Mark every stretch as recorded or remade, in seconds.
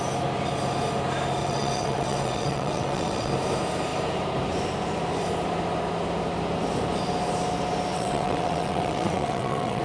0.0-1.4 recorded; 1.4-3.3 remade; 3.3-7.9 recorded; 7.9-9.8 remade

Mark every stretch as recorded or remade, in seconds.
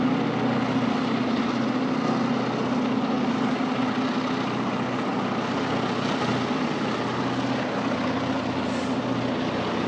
0.0-9.9 recorded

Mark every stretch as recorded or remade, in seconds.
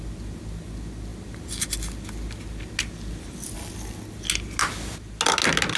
0.0-5.8 recorded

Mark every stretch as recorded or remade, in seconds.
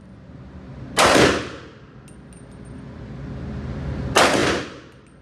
0.0-5.2 recorded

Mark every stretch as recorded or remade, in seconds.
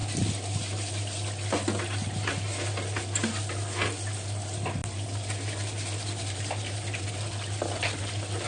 0.0-8.5 recorded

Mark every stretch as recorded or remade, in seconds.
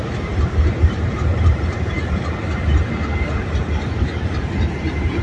0.0-5.2 remade